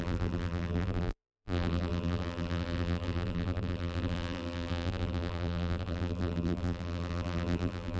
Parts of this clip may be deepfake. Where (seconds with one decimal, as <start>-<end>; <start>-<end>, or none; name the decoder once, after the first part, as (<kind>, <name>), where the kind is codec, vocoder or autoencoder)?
0.0-8.0 (vocoder, BigVGAN v2)